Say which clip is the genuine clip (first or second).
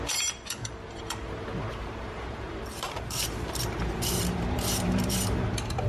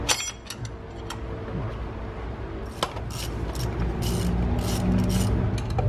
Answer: second